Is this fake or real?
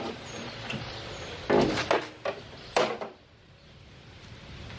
real